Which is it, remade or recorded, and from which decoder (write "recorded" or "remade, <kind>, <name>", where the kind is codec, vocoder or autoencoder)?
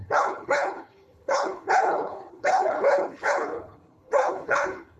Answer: remade, codec, HILCodec